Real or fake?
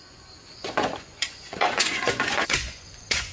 fake